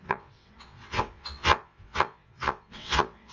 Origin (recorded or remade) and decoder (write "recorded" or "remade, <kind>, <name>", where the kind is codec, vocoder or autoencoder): remade, vocoder, WaveNeXt